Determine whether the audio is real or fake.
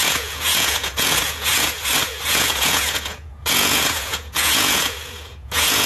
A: fake